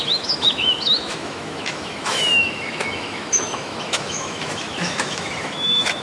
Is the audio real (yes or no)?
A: no